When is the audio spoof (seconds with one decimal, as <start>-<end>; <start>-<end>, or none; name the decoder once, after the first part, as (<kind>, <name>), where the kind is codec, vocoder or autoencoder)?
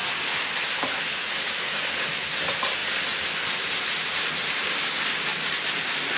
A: none